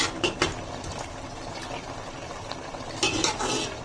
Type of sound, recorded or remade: recorded